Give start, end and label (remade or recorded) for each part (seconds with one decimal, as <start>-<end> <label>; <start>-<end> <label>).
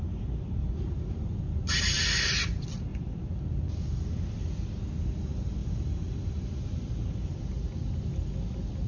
0.0-0.6 recorded; 0.6-1.4 remade; 1.4-2.9 recorded; 2.9-4.8 remade; 4.8-5.6 recorded; 5.6-7.4 remade; 7.4-8.9 recorded